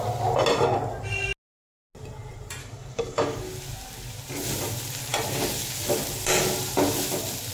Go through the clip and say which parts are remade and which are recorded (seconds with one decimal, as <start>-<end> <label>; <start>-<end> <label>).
0.0-2.6 recorded; 2.6-3.4 remade; 3.4-7.5 recorded